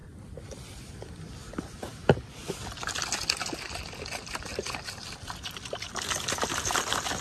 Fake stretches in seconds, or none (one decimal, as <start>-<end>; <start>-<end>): none

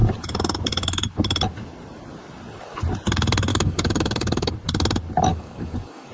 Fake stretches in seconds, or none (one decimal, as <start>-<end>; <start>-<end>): 3.5-4.5; 5.3-6.1

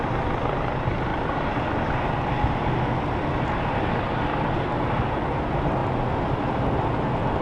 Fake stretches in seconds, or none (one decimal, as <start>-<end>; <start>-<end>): none